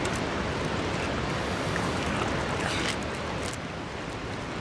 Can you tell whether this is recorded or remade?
recorded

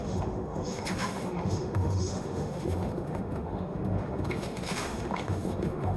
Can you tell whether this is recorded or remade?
remade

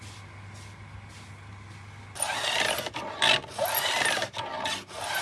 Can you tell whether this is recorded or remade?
recorded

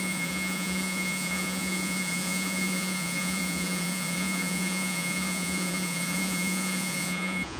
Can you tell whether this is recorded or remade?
remade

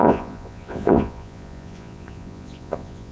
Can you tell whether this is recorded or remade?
remade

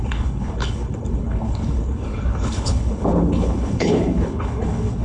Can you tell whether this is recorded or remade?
remade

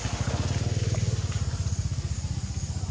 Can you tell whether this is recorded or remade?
recorded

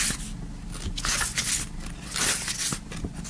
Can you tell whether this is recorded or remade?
recorded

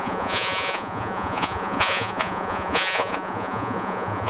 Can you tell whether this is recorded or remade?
remade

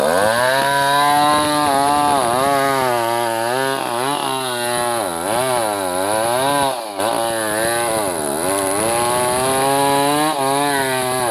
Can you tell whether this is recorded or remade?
recorded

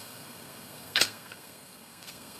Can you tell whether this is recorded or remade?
remade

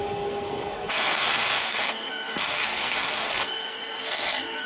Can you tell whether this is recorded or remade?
remade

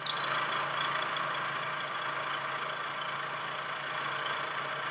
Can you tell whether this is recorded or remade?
recorded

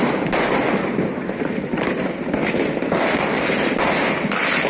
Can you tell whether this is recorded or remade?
recorded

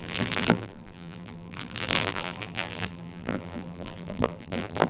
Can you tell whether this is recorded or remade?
remade